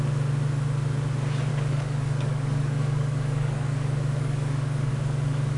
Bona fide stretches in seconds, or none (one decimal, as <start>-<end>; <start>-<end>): 0.0-1.5; 4.9-5.6